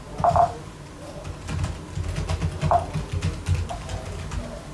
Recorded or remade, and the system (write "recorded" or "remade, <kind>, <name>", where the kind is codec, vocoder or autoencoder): recorded